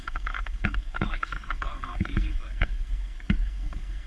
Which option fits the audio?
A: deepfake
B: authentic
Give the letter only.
A